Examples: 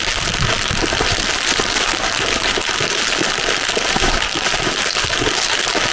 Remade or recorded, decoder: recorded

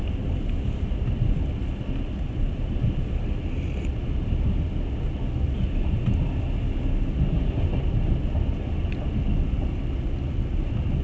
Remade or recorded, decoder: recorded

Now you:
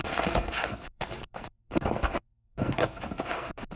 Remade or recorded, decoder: remade, codec, SNAC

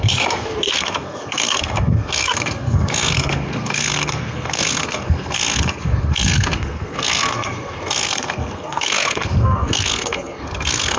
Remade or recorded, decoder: remade, codec, SNAC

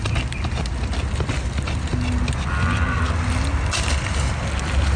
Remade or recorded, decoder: recorded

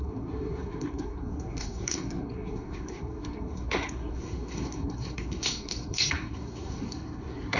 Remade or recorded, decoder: remade, codec, SNAC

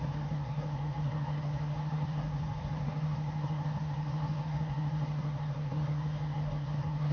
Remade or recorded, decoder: remade, codec, SNAC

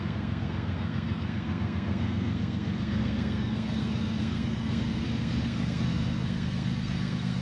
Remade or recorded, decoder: remade, codec, SNAC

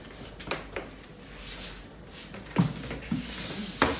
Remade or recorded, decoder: recorded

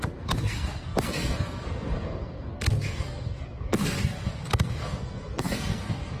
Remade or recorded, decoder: remade, codec, SNAC